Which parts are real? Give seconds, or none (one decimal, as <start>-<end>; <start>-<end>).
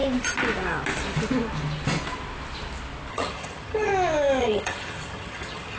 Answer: 0.0-3.1; 3.9-4.4